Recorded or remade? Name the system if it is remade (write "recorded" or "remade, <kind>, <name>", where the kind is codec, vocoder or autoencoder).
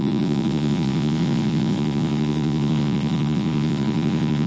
remade, vocoder, Vocos